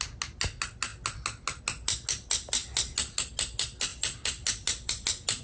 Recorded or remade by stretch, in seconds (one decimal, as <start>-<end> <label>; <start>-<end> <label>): 0.0-5.4 recorded

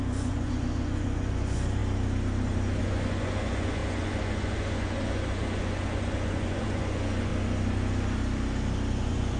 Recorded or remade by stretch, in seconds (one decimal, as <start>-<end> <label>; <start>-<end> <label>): 0.0-1.8 remade; 1.8-2.8 recorded; 2.8-7.3 remade; 7.3-8.9 recorded; 8.9-9.4 remade

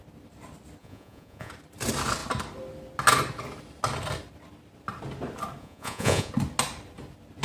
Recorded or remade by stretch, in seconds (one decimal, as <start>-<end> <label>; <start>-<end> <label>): 0.0-0.8 recorded; 0.8-1.5 remade; 1.5-5.6 recorded; 5.6-6.3 remade; 6.3-7.4 recorded

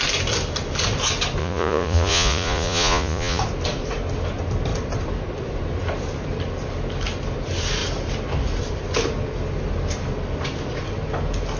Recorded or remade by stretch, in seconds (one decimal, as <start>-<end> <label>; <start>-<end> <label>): 0.0-1.4 recorded; 1.4-3.4 remade; 3.4-11.6 recorded

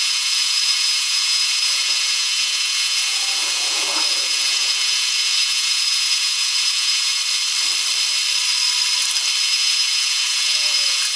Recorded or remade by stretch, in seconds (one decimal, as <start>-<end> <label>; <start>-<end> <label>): 0.0-7.2 remade; 7.2-9.4 recorded; 9.4-11.2 remade

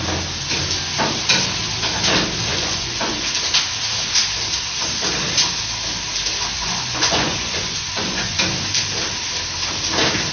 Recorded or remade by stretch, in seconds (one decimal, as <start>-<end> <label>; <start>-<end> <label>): 0.0-2.5 recorded; 2.5-3.3 remade; 3.3-6.5 recorded; 6.5-8.4 remade; 8.4-10.3 recorded